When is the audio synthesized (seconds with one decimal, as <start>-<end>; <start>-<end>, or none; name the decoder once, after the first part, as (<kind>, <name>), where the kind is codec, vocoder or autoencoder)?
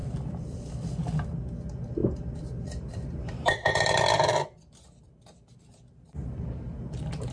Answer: 0.0-0.9 (vocoder, BigVGAN v2); 2.0-6.4